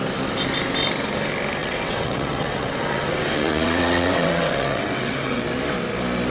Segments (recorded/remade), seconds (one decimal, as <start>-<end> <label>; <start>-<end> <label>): 0.0-1.6 recorded; 1.6-5.4 remade; 5.4-6.3 recorded